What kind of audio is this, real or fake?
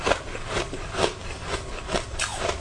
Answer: fake